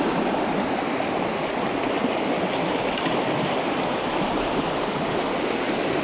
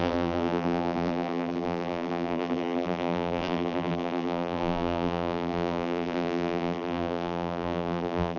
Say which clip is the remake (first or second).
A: second